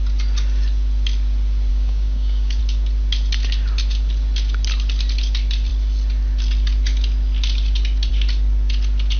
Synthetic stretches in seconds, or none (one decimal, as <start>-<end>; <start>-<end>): 1.7-2.6